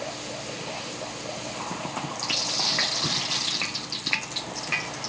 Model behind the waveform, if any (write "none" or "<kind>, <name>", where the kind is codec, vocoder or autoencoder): none